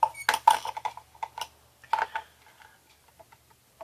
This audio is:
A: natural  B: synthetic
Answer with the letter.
A